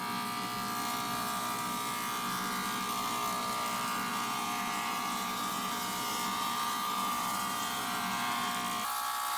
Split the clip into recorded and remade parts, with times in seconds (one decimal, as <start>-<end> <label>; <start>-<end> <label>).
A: 0.0-4.1 recorded; 4.1-8.5 remade; 8.5-9.4 recorded